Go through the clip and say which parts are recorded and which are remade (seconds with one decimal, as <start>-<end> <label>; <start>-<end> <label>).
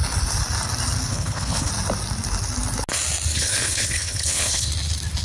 0.0-1.1 recorded; 1.1-1.7 remade; 1.7-3.3 recorded; 3.3-4.7 remade; 4.7-5.2 recorded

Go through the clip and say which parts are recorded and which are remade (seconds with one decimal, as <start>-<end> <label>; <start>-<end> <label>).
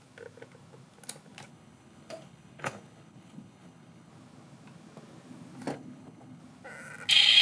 0.0-1.5 recorded; 1.5-4.1 remade; 4.1-5.7 recorded; 5.7-6.4 remade; 6.4-7.4 recorded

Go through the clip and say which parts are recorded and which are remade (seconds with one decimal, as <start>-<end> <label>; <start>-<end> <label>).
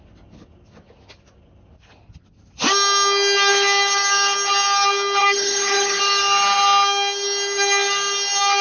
0.0-5.2 recorded; 5.2-6.0 remade; 6.0-8.6 recorded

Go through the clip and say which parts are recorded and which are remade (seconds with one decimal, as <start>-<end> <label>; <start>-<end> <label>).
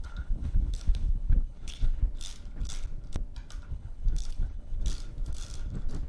0.0-2.0 remade; 2.0-3.7 recorded; 3.7-4.8 remade; 4.8-6.1 recorded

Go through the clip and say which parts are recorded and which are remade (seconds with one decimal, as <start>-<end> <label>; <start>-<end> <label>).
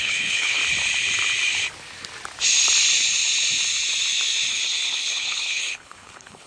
0.0-0.6 remade; 0.6-4.5 recorded; 4.5-6.5 remade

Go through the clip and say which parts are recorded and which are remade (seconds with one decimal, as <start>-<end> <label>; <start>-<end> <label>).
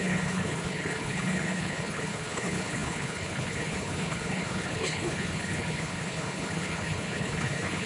0.0-7.9 remade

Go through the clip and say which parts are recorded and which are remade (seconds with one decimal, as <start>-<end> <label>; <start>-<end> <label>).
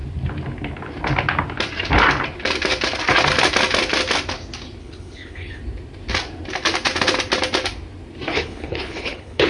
0.0-4.8 recorded; 4.8-5.6 remade; 5.6-8.3 recorded; 8.3-9.5 remade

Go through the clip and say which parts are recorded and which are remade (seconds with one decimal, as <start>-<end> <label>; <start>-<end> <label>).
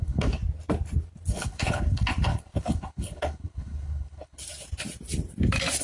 0.0-0.4 remade; 0.4-1.3 recorded; 1.3-4.4 remade; 4.4-5.8 recorded